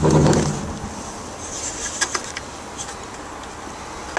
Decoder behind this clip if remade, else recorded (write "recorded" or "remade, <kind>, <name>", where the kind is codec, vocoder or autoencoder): recorded